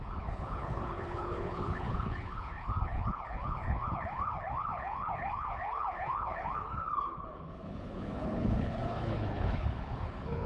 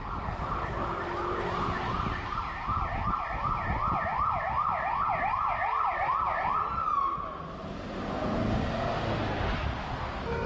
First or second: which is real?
second